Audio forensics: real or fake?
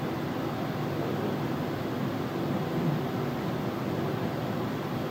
real